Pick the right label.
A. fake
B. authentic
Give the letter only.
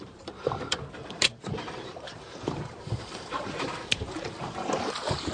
A